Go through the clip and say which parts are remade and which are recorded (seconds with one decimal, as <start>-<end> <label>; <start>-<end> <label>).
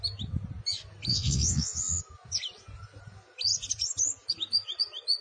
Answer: 0.0-1.1 recorded; 1.1-2.0 remade; 2.0-5.2 recorded